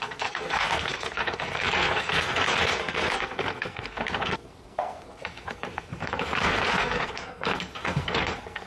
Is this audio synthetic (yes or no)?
yes